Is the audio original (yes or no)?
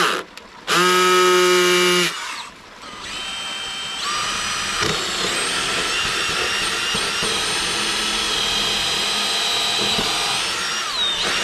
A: yes